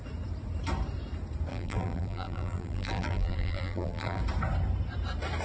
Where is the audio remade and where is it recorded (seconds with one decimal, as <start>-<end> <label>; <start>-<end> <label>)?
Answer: 0.0-1.5 recorded; 1.5-4.2 remade; 4.2-5.4 recorded